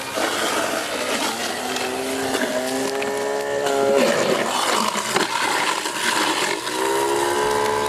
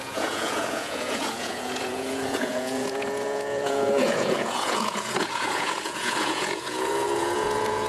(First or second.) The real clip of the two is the first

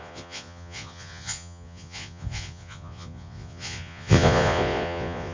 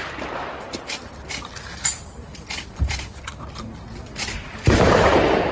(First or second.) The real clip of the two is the second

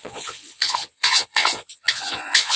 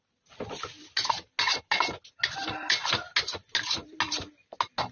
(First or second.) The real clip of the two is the second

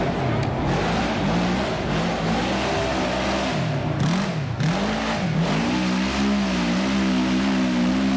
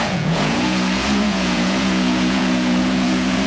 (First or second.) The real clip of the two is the first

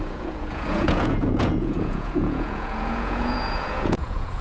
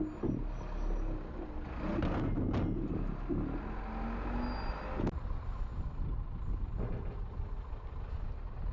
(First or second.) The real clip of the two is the second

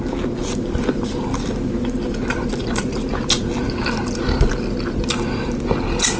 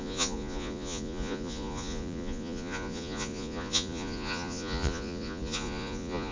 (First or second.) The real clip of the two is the first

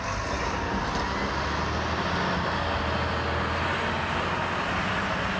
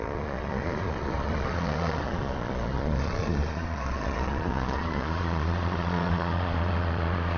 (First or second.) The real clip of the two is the first